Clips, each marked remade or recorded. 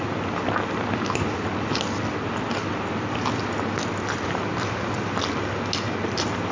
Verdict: recorded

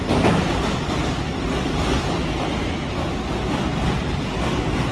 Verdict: recorded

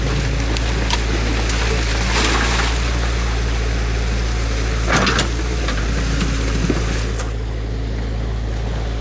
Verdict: recorded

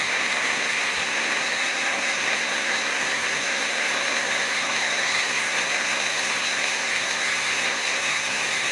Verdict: remade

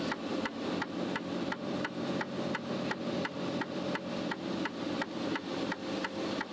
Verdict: recorded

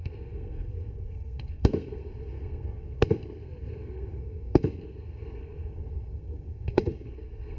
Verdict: remade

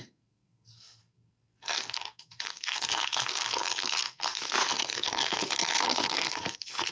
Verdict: remade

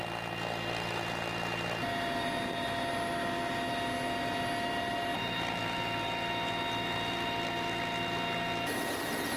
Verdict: recorded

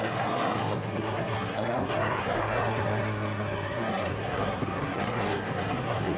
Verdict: remade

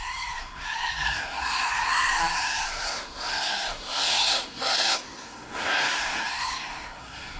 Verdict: remade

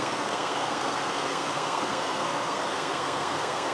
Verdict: remade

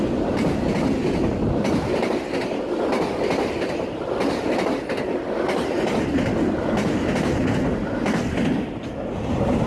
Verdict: recorded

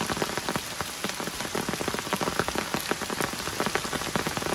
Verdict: recorded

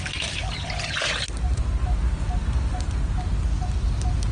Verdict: recorded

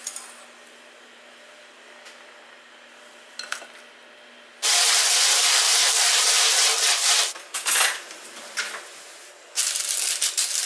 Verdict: recorded